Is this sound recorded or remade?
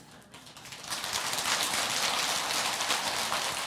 recorded